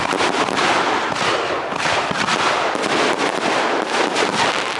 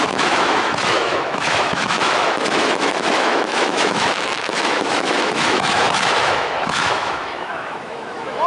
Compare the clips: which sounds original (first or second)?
first